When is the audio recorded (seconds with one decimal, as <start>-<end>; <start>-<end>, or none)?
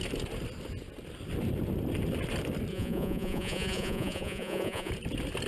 0.0-2.7; 4.9-5.5